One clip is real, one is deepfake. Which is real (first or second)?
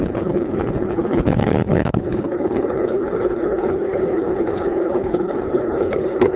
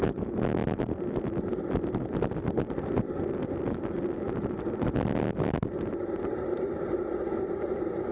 second